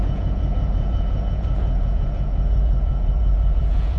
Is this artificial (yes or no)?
yes